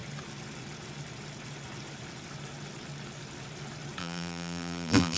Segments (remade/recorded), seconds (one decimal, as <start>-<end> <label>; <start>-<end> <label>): 0.0-4.0 recorded; 4.0-5.2 remade